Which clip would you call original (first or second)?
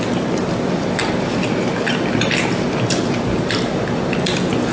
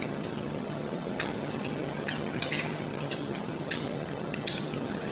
first